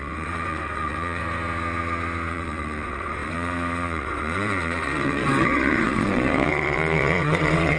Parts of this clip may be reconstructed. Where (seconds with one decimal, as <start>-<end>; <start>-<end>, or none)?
0.0-1.2; 2.3-7.8